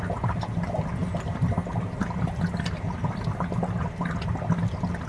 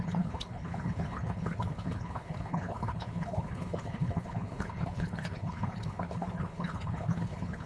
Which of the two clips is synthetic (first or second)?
second